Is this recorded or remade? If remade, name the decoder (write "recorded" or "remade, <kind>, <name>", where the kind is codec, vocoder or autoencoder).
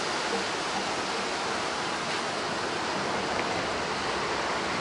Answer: recorded